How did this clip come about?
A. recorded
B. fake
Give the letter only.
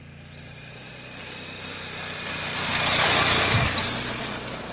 A